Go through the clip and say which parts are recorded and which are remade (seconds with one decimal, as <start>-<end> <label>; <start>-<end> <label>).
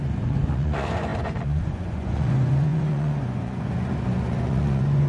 0.0-5.1 remade